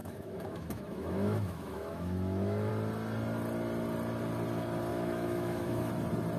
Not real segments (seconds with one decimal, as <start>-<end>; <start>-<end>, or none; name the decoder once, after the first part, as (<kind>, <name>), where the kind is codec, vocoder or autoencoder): 0.0-2.7 (autoencoder, DAC-VAE); 4.9-5.9